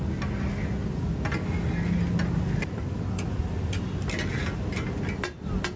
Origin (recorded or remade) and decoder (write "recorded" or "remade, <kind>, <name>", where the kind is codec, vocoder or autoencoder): recorded